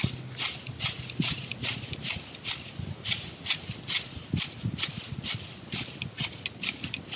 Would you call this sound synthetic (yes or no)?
no